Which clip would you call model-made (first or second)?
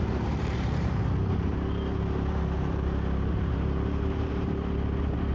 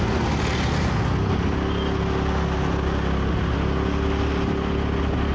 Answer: first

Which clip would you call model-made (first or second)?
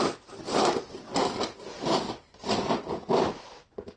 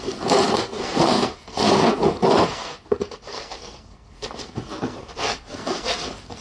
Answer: second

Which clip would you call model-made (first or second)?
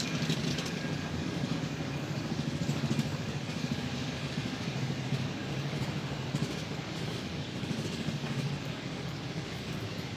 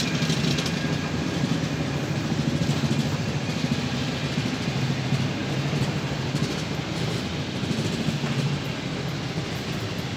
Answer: first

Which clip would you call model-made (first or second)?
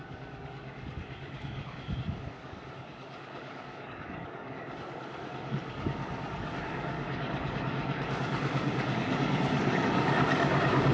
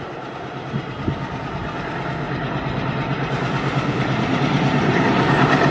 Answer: first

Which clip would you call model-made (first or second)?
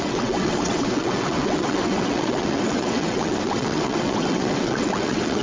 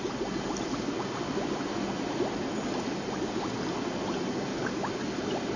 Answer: first